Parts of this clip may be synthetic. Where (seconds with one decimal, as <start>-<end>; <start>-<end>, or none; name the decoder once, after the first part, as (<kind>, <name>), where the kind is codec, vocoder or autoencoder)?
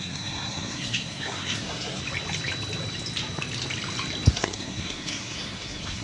0.0-2.0 (codec, SNAC); 4.3-6.0